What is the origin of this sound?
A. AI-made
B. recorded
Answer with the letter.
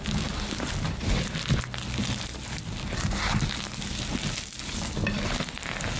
B